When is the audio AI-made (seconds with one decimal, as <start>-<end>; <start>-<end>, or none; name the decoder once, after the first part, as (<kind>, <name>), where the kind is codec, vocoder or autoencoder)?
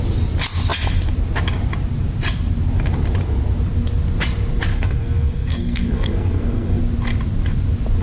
4.7-6.8 (codec, SNAC)